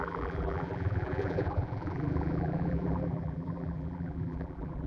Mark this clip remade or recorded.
remade